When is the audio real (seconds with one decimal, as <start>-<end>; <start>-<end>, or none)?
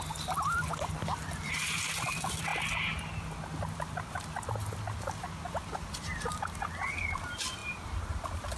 2.5-7.1